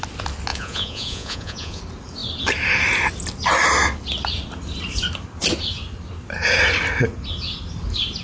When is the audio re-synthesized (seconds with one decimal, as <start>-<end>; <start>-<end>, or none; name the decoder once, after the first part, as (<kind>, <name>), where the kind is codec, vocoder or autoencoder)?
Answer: 0.5-1.8 (vocoder, Vocos)